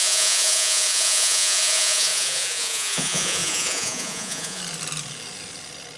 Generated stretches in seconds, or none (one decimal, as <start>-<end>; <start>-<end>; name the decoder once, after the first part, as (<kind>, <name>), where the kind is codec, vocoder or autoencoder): 0.0-4.6 (vocoder, Vocos)